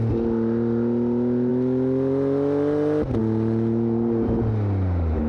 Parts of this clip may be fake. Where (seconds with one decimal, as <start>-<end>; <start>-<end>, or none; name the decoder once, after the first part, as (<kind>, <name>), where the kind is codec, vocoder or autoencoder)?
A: none